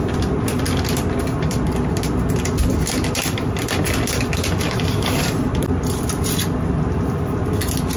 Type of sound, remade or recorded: remade